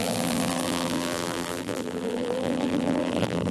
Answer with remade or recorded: remade